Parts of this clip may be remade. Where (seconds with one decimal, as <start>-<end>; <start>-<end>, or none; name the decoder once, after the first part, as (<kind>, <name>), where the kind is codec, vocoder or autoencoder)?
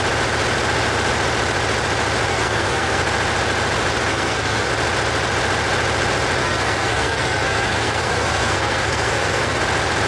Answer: 2.3-3.0 (codec, SNAC); 4.1-4.7; 6.4-9.6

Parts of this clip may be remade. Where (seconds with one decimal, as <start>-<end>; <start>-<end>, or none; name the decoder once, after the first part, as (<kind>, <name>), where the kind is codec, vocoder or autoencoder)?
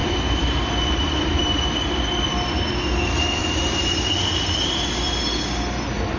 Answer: 0.0-2.0 (vocoder, BigVGAN v2); 3.4-5.3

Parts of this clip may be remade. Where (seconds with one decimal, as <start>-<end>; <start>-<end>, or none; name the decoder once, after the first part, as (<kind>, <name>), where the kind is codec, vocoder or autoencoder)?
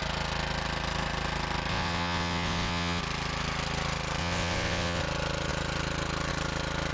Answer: 1.7-3.0 (vocoder, WaveNeXt); 4.2-5.0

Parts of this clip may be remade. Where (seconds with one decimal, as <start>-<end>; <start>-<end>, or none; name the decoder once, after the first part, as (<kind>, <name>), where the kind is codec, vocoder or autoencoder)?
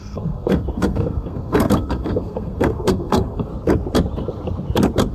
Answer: 0.0-3.5 (codec, SNAC)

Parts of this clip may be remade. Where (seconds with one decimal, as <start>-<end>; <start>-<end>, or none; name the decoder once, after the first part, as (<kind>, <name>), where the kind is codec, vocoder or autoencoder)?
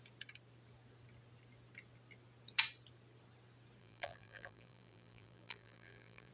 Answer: 3.8-6.3 (vocoder, BigVGAN v2)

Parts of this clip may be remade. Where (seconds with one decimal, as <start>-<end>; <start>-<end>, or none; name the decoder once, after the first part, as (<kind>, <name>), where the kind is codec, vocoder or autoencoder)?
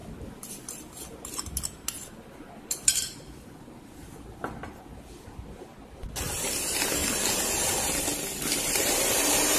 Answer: 2.9-5.7 (vocoder, BigVGAN v2); 6.3-7.0; 8.5-9.6